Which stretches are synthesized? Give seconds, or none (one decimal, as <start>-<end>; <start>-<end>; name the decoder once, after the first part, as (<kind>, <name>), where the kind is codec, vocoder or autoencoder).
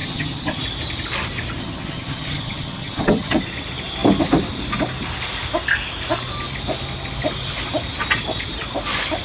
0.0-0.6 (vocoder, HiFi-GAN); 1.6-3.4